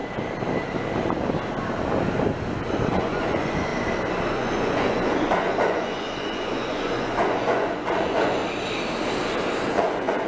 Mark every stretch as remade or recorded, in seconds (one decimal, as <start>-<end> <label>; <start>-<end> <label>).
0.0-2.9 recorded; 2.9-3.7 remade; 3.7-4.3 recorded; 4.3-8.4 remade; 8.4-9.7 recorded; 9.7-10.3 remade